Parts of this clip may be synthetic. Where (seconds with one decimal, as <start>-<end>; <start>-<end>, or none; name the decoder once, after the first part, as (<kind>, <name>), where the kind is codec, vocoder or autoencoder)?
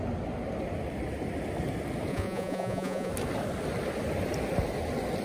2.1-3.1 (vocoder, Vocos)